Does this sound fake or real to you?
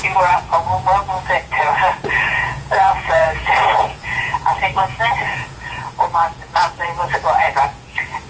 fake